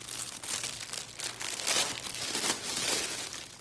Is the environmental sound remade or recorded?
recorded